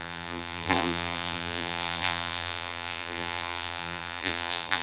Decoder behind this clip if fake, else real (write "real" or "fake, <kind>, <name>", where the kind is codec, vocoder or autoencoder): fake, vocoder, BigVGAN v2